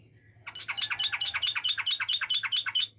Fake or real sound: real